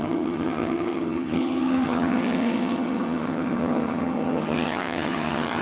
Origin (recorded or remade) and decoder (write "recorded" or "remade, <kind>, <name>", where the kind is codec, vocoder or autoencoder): remade, vocoder, HiFi-GAN